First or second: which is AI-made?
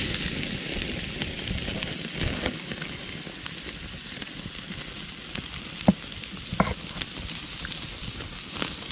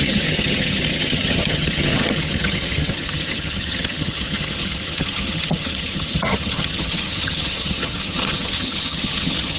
second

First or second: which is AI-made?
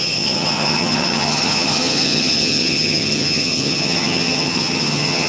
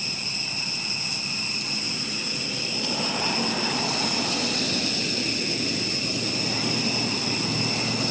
first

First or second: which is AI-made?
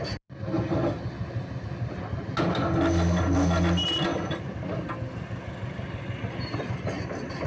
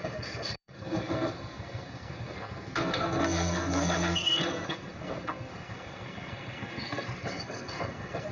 second